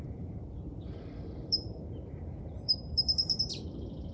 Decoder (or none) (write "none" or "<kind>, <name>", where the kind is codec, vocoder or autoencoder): vocoder, BigVGAN v2